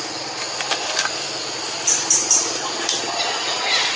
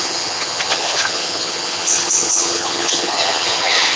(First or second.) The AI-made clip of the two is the second